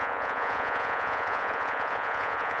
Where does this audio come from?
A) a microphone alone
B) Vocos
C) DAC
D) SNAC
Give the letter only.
B